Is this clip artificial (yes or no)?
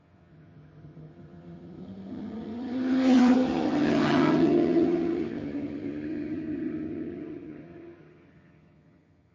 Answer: yes